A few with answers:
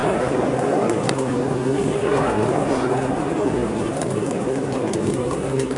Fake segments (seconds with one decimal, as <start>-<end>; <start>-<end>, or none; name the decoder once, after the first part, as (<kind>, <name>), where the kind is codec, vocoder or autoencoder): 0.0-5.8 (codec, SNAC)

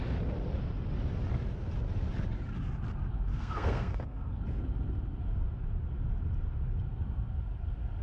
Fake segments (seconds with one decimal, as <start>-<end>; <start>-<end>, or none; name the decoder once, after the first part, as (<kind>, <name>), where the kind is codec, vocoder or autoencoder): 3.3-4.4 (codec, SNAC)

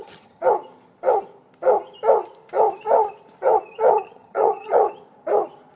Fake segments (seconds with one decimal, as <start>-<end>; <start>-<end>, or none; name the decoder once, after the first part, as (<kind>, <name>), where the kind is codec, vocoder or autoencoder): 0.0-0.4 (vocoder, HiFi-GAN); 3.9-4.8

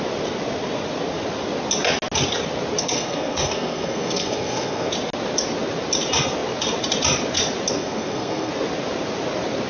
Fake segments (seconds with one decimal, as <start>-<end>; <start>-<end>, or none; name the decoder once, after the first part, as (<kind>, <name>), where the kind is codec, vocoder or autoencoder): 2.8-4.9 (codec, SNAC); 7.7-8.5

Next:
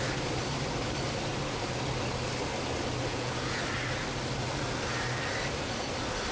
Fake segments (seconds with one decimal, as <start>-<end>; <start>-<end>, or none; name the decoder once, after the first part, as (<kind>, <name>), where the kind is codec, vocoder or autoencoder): 3.1-3.6 (vocoder, Vocos)

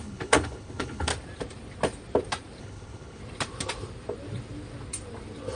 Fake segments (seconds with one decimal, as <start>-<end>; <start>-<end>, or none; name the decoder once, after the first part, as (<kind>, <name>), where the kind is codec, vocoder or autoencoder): 0.0-1.1 (codec, HILCodec); 2.6-3.2

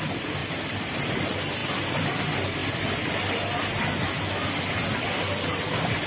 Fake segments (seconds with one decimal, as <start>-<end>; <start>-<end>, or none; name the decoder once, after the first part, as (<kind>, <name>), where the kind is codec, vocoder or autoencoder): 0.4-1.2 (vocoder, BigVGAN v2); 1.6-2.2

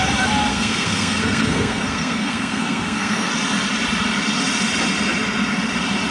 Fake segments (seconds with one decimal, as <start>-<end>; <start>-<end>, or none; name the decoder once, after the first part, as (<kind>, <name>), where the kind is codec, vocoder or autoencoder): 0.5-3.3 (codec, SNAC)